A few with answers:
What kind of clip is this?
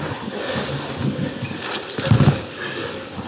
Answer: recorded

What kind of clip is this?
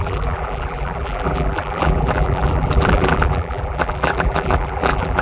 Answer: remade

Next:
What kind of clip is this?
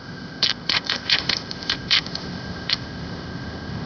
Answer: remade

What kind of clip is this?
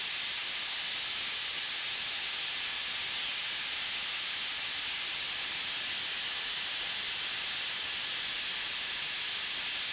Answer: recorded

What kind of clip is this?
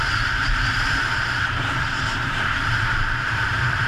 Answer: remade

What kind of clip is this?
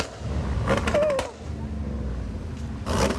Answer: recorded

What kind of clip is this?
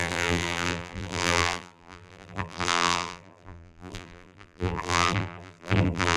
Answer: remade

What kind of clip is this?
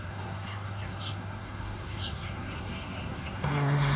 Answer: remade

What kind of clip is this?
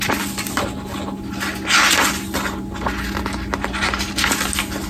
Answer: recorded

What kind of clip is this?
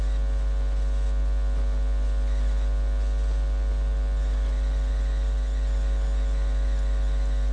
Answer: recorded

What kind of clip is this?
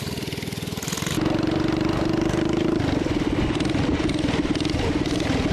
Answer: recorded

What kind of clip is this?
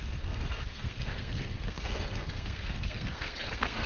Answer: remade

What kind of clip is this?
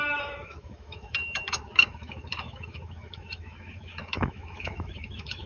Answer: remade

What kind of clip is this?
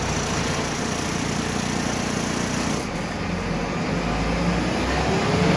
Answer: recorded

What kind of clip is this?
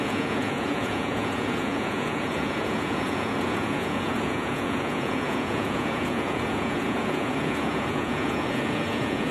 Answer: remade